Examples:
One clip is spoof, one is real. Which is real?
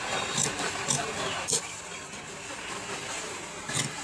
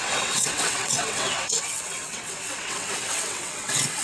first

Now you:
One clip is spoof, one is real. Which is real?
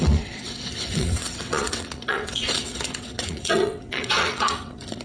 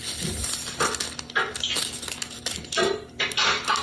second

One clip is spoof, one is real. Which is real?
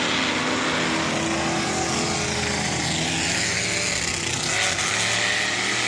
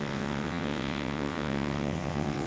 first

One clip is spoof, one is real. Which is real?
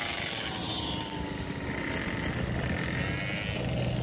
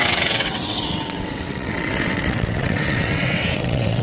first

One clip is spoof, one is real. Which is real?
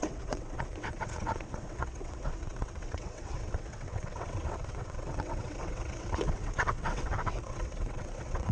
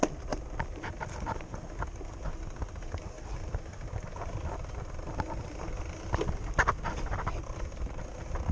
second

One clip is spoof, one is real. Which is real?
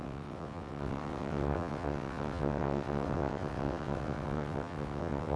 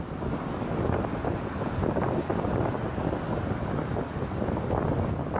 second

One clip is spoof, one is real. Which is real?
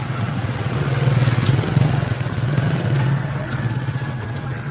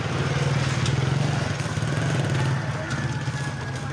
second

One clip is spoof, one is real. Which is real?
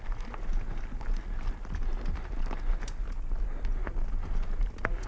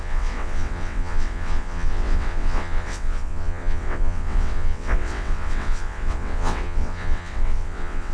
first